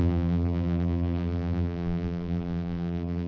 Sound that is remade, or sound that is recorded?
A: remade